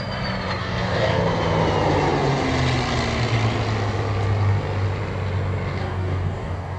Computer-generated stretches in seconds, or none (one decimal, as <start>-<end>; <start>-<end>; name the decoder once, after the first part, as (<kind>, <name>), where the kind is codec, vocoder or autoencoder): 0.6-1.2 (codec, DAC); 5.8-6.8